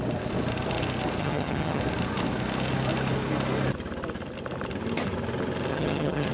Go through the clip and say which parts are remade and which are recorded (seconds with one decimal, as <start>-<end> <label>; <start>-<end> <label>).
0.0-1.2 recorded; 1.2-1.8 remade; 1.8-5.7 recorded; 5.7-6.3 remade